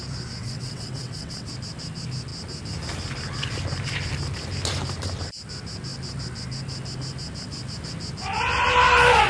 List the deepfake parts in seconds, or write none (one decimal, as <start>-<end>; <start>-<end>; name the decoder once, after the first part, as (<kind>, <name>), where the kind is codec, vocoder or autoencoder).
0.4-1.5 (vocoder, WaveNeXt)

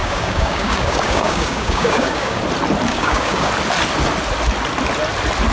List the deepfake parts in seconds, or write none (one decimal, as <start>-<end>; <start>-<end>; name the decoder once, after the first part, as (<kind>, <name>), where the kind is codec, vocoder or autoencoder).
0.0-2.4 (codec, DAC); 2.9-3.5

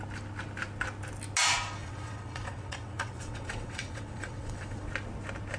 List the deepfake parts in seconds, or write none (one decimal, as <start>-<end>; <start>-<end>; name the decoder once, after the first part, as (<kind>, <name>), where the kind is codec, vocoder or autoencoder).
1.8-4.9 (vocoder, WaveNeXt)

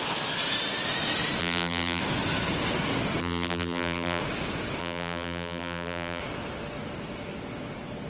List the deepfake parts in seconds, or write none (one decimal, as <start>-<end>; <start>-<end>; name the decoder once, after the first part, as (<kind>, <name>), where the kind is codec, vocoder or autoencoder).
1.4-2.0 (vocoder, BigVGAN v2); 3.2-4.2; 4.8-6.2

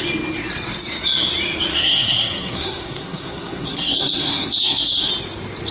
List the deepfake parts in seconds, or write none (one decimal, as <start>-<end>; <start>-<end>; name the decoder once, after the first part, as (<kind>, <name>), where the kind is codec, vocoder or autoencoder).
1.7-5.1 (codec, SNAC)

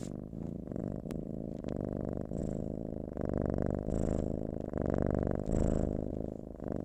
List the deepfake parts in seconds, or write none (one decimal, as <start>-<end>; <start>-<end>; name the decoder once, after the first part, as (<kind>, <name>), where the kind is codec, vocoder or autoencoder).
0.8-2.4 (vocoder, BigVGAN v2); 6.1-6.8